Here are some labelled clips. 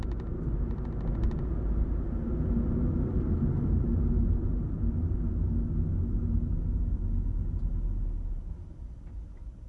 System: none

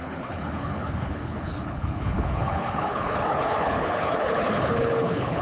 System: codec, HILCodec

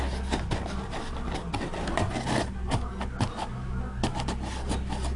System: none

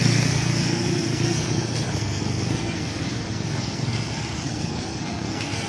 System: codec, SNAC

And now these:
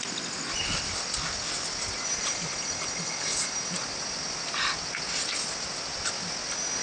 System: none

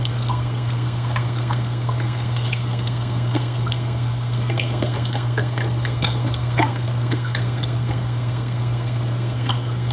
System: codec, SNAC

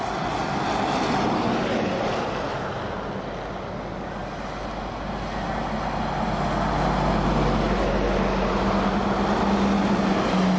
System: none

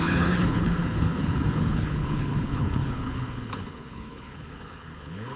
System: codec, HILCodec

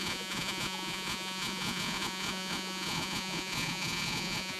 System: vocoder, Vocos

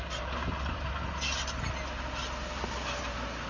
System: none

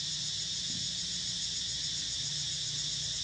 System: none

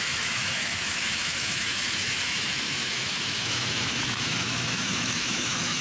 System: autoencoder, DAC-VAE